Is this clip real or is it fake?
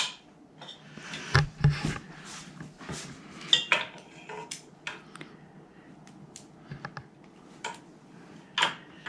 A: real